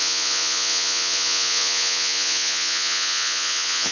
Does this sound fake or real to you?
fake